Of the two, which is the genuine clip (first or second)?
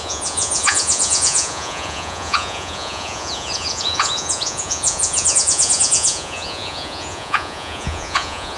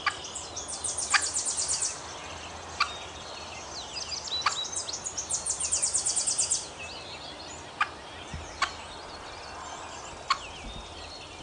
second